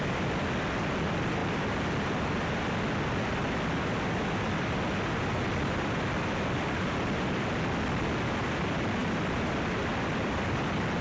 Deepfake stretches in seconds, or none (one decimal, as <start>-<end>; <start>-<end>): none